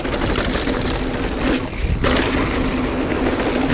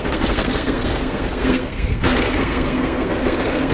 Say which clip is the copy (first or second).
second